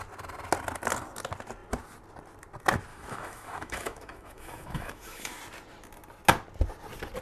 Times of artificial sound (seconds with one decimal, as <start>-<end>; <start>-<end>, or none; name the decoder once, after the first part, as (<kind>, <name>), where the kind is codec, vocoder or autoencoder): 2.9-5.4 (autoencoder, DAC-VAE)